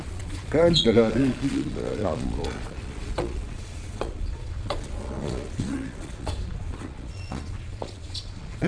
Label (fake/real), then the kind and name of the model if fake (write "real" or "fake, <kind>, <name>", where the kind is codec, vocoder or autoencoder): fake, vocoder, Vocos